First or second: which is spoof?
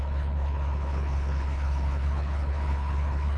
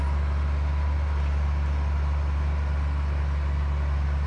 first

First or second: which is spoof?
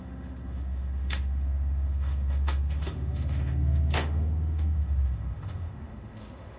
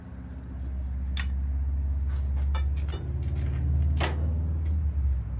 first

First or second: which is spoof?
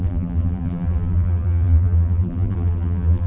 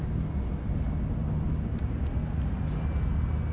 first